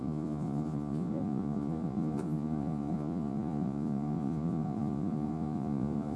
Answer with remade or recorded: remade